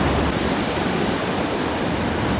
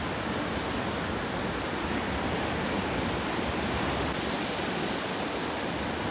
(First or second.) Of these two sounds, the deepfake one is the first